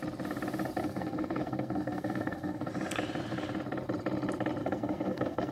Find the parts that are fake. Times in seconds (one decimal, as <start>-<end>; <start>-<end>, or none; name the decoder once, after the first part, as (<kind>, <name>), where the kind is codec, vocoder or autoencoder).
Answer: 0.8-2.7 (codec, SNAC); 4.6-5.5